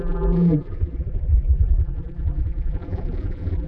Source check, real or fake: fake